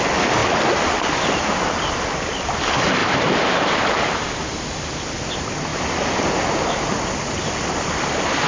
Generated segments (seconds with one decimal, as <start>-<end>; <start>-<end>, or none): 0.4-1.0; 3.0-4.9